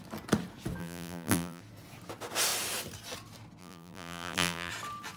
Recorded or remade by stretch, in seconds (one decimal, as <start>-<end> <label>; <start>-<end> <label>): 0.0-0.8 recorded; 0.8-1.6 remade; 1.6-3.6 recorded; 3.6-4.7 remade; 4.7-5.2 recorded